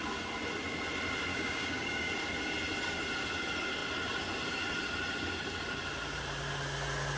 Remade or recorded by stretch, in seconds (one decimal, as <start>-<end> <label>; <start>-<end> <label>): 0.0-1.3 recorded; 1.3-2.1 remade; 2.1-7.2 recorded